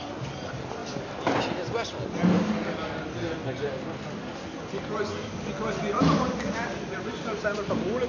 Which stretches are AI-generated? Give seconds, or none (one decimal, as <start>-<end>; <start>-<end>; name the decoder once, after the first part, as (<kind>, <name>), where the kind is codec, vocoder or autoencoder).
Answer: none